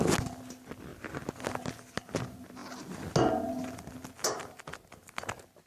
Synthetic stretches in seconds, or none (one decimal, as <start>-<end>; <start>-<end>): none